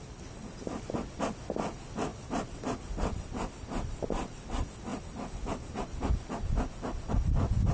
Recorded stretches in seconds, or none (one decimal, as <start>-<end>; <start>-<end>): 0.0-7.7